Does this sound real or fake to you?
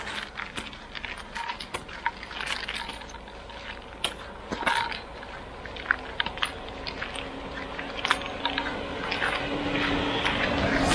real